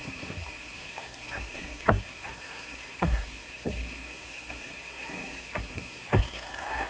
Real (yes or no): no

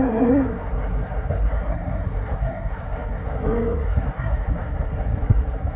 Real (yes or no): no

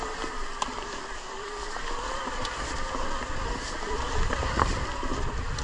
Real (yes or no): yes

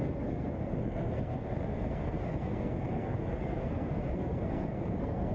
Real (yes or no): no